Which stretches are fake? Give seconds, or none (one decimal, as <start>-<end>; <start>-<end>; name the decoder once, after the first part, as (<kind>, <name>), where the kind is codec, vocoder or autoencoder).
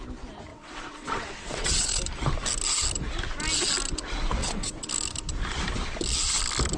0.5-2.0 (vocoder, WaveNeXt); 4.4-4.9